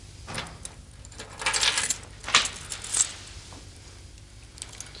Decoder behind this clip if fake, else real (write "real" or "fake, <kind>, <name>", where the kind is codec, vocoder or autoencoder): real